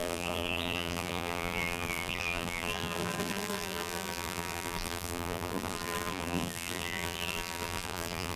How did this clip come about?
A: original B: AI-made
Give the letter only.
B